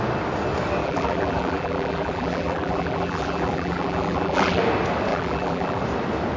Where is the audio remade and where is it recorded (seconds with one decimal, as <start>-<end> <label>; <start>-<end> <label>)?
0.0-0.8 recorded; 0.8-4.6 remade; 4.6-5.1 recorded; 5.1-5.8 remade; 5.8-6.4 recorded

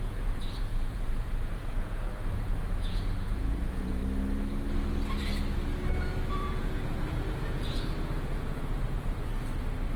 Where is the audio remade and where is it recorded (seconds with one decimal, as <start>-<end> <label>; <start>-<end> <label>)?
0.0-4.0 remade; 4.0-6.3 recorded; 6.3-9.3 remade; 9.3-10.0 recorded

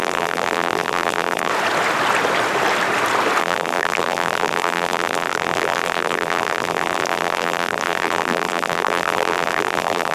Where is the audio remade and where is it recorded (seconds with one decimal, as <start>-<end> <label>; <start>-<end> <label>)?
0.0-1.5 remade; 1.5-3.4 recorded; 3.4-10.1 remade

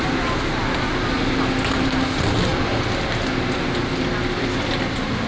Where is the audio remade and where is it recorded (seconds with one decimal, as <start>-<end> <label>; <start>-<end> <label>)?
0.0-5.3 recorded

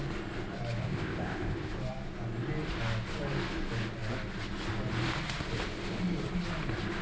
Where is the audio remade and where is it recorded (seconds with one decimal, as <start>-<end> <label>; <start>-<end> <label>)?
0.0-0.8 recorded; 0.8-1.7 remade; 1.7-7.0 recorded

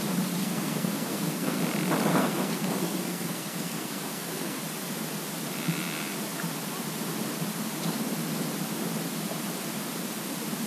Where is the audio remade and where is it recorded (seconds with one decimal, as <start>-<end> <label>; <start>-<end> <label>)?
0.0-0.4 recorded; 0.4-1.6 remade; 1.6-2.1 recorded; 2.1-4.6 remade; 4.6-10.7 recorded

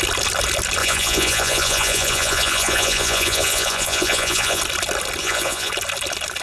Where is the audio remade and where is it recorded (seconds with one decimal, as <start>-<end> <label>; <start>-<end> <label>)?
0.0-0.8 recorded; 0.8-4.6 remade; 4.6-5.2 recorded; 5.2-5.7 remade; 5.7-6.4 recorded

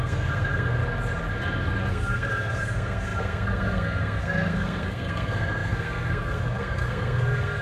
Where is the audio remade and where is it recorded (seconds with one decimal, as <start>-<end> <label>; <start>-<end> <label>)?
0.0-0.8 remade; 0.8-1.9 recorded; 1.9-7.6 remade